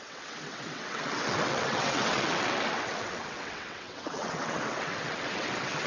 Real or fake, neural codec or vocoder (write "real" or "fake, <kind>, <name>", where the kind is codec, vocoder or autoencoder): fake, vocoder, WaveNeXt